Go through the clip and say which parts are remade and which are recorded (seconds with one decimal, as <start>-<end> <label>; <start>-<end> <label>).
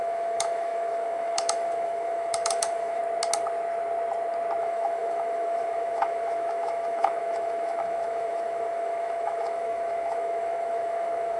0.0-3.0 remade; 3.0-4.6 recorded; 4.6-11.4 remade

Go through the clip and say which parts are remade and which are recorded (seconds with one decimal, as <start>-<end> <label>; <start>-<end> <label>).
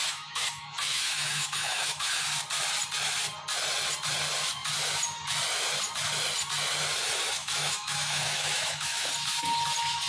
0.0-2.2 remade; 2.2-7.4 recorded; 7.4-9.1 remade; 9.1-10.1 recorded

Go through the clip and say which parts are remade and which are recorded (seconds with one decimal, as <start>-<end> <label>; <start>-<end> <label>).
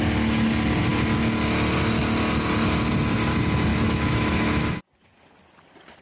0.0-3.7 recorded; 3.7-4.8 remade; 4.8-6.0 recorded